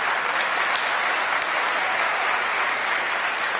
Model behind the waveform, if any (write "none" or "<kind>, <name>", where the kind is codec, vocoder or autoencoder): none